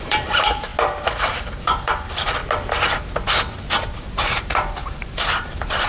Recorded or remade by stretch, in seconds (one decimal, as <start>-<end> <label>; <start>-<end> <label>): 0.0-0.7 remade; 0.7-1.3 recorded; 1.3-2.4 remade; 2.4-4.0 recorded; 4.0-5.9 remade